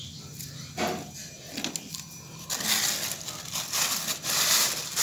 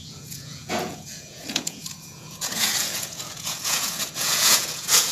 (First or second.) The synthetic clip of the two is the second